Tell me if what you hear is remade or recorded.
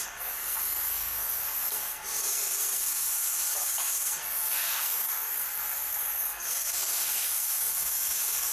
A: remade